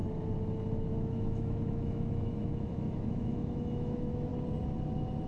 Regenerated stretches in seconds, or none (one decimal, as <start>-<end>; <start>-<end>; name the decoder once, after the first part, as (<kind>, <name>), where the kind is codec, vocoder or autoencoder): 0.9-4.3 (autoencoder, DAC-VAE)